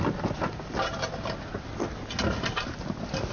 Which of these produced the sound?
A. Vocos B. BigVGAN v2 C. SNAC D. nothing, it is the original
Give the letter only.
D